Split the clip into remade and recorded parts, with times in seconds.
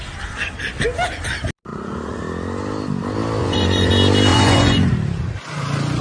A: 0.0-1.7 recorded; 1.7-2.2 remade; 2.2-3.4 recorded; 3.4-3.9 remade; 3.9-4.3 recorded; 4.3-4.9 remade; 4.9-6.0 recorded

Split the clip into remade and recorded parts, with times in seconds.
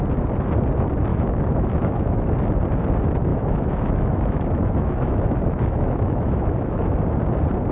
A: 0.0-1.1 recorded; 1.1-2.3 remade; 2.3-3.3 recorded; 3.3-6.9 remade; 6.9-7.7 recorded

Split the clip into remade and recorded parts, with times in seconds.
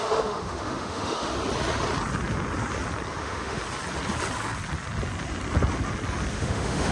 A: 0.0-1.3 remade; 1.3-3.2 recorded; 3.2-3.6 remade; 3.6-6.3 recorded; 6.3-6.9 remade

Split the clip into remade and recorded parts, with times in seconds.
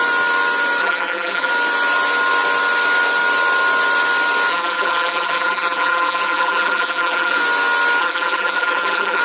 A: 0.0-0.8 recorded; 0.8-1.5 remade; 1.5-4.5 recorded; 4.5-7.4 remade; 7.4-8.0 recorded; 8.0-9.2 remade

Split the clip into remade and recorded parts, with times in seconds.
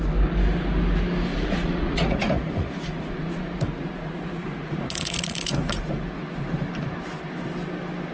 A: 0.0-1.3 recorded; 1.3-6.2 remade; 6.2-8.1 recorded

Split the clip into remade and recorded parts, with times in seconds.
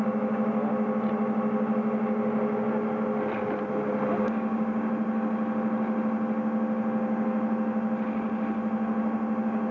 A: 0.0-4.2 recorded; 4.2-4.9 remade; 4.9-9.7 recorded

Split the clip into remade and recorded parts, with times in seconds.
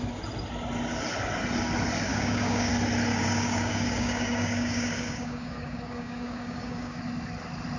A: 0.0-2.1 recorded; 2.1-2.7 remade; 2.7-3.1 recorded; 3.1-7.0 remade; 7.0-7.8 recorded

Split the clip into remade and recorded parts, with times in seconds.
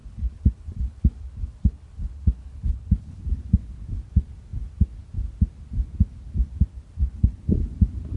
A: 0.0-3.2 remade; 3.2-6.7 recorded; 6.7-7.4 remade; 7.4-8.2 recorded